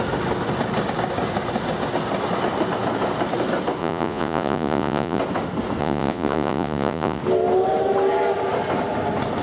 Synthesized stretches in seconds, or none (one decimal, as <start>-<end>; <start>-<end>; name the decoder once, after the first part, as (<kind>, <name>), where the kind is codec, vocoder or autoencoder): 3.8-5.2 (vocoder, Vocos); 5.8-7.2